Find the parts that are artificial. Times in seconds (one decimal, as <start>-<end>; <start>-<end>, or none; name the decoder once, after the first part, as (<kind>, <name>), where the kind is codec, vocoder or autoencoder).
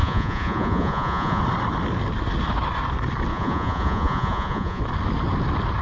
0.0-1.4 (vocoder, Vocos); 3.3-4.8